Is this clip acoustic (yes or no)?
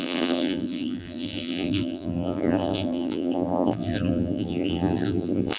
no